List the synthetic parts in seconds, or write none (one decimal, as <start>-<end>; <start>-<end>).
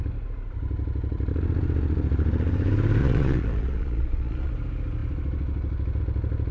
3.0-4.5